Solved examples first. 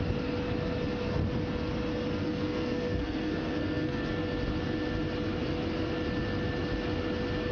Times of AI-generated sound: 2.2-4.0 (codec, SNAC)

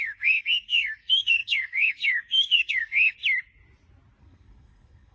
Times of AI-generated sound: 0.0-3.1 (codec, SNAC); 4.2-5.1